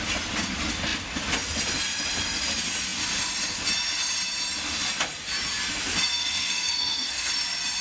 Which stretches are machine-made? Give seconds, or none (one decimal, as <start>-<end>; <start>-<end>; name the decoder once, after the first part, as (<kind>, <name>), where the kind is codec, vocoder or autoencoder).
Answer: 6.2-7.3 (codec, SNAC)